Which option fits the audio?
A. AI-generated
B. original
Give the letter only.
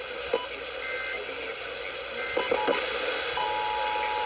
B